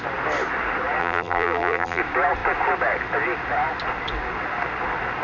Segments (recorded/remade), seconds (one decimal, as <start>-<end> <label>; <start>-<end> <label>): 0.0-1.0 recorded; 1.0-2.0 remade; 2.0-5.2 recorded